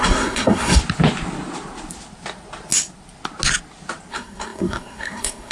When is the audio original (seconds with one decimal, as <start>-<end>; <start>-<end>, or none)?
0.8-4.1